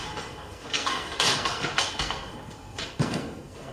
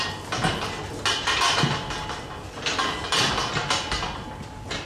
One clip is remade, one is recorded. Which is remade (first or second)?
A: first